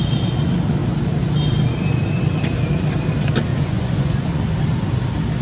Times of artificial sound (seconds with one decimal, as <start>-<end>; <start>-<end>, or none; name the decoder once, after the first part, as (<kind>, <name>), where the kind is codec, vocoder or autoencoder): 3.5-4.4 (vocoder, Vocos)